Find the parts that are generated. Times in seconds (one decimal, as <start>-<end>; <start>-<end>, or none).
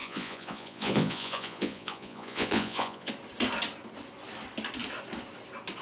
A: 0.0-3.1